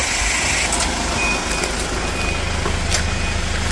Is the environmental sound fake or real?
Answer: real